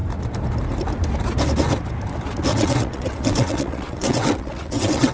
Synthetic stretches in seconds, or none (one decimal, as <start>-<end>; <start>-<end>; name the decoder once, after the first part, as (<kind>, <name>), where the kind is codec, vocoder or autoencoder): 2.5-5.1 (vocoder, WaveNeXt)